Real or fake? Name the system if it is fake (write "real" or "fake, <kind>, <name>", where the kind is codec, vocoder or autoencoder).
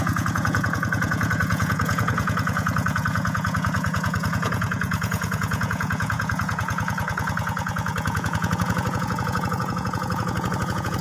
fake, vocoder, Vocos